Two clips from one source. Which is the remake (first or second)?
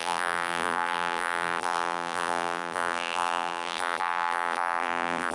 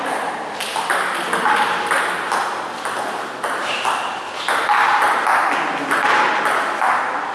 first